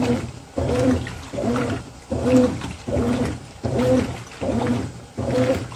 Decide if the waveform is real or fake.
fake